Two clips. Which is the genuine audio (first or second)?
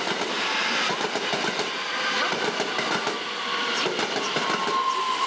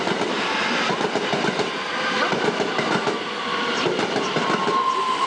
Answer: first